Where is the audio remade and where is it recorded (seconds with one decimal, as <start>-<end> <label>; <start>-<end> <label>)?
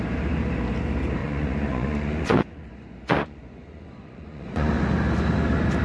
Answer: 0.0-1.2 recorded; 1.2-4.7 remade; 4.7-5.8 recorded